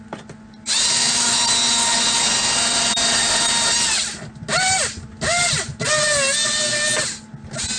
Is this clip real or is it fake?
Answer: real